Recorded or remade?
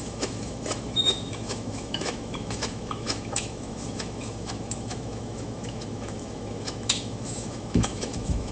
remade